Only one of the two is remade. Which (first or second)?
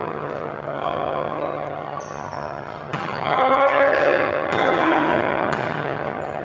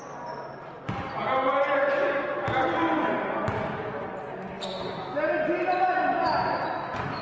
first